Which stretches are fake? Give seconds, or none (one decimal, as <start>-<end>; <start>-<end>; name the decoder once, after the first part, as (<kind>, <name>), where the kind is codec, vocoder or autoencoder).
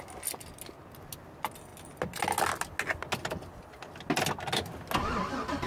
none